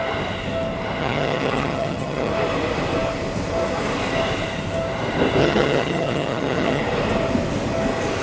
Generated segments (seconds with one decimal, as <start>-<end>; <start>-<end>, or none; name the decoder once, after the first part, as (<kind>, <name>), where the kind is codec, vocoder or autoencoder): 1.0-2.3 (vocoder, HiFi-GAN); 5.4-6.8